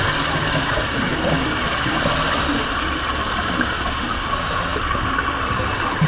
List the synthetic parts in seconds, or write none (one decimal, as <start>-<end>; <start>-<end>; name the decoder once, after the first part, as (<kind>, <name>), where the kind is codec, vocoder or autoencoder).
none